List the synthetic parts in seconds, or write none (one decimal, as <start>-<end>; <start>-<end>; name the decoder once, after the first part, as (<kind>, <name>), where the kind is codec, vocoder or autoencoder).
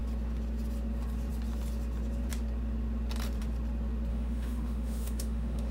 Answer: 4.1-5.7 (autoencoder, DAC-VAE)